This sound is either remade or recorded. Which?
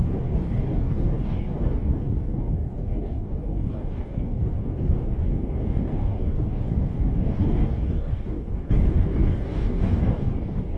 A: remade